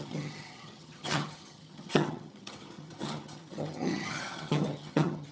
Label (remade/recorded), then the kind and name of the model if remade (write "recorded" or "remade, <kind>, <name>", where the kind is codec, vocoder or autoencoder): remade, vocoder, HiFi-GAN